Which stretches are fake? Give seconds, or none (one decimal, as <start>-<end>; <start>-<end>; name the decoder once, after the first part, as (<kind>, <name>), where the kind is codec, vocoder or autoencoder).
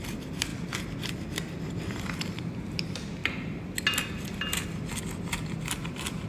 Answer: 0.0-0.5 (vocoder, BigVGAN v2); 2.6-3.2